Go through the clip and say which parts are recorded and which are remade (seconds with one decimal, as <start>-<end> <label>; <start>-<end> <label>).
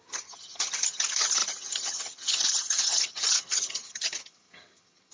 0.0-5.1 remade